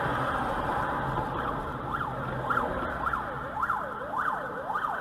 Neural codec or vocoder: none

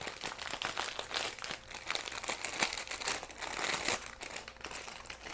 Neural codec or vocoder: none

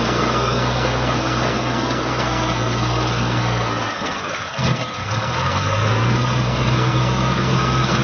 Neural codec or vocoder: codec, SNAC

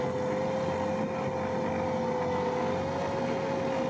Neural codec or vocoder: none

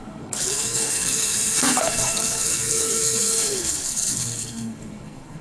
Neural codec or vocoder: codec, SNAC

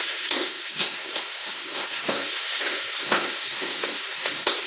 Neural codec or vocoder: codec, SNAC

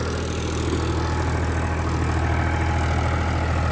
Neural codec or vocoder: none